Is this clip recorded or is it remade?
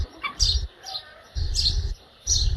remade